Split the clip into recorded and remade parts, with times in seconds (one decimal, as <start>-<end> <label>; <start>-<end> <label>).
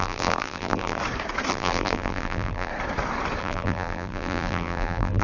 0.0-1.0 remade; 1.0-1.5 recorded; 1.5-2.7 remade; 2.7-3.4 recorded; 3.4-5.2 remade